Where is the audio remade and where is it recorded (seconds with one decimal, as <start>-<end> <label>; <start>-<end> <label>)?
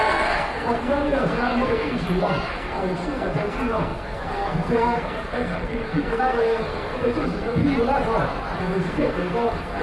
0.0-7.6 remade; 7.6-8.6 recorded; 8.6-9.8 remade